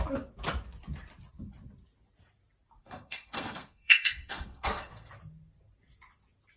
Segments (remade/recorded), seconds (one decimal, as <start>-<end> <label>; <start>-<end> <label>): 0.0-2.8 recorded; 2.8-5.1 remade; 5.1-6.6 recorded